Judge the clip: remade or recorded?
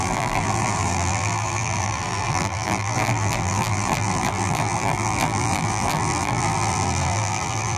remade